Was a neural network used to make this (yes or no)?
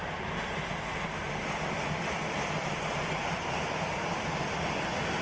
no